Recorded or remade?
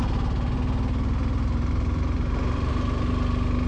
recorded